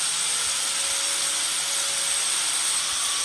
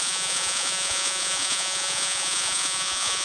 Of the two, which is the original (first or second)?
first